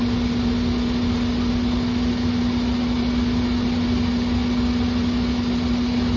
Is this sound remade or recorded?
recorded